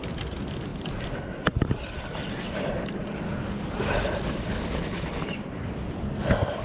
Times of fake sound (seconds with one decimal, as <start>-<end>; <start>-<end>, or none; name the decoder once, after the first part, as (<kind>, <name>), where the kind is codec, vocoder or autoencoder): none